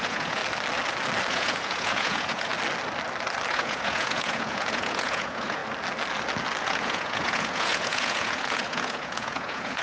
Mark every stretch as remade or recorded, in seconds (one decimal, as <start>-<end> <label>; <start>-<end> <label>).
0.0-0.4 remade; 0.4-1.3 recorded; 1.3-2.5 remade; 2.5-3.5 recorded; 3.5-5.6 remade; 5.6-6.6 recorded; 6.6-9.8 remade